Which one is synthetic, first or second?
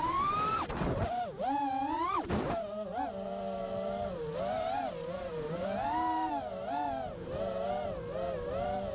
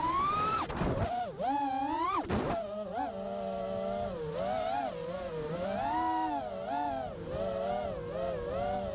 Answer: first